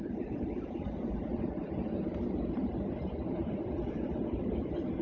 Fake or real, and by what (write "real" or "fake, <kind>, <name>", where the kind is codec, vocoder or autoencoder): fake, vocoder, BigVGAN v2